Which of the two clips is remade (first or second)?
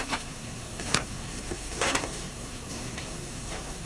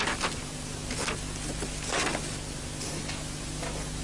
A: first